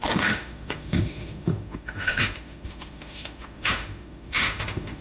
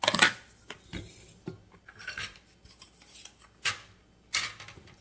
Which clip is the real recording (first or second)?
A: second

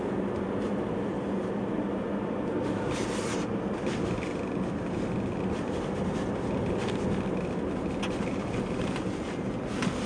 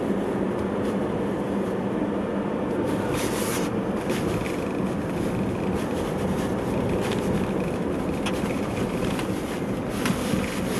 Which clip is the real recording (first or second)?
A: first